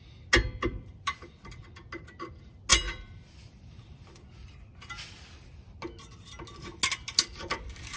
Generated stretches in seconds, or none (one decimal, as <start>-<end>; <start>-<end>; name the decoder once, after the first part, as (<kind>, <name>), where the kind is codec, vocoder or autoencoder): 0.7-1.6 (vocoder, BigVGAN v2); 2.7-4.5